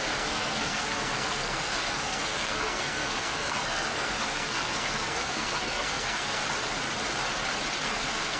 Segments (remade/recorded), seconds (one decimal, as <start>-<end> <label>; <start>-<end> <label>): 0.0-6.4 remade; 6.4-7.8 recorded; 7.8-8.4 remade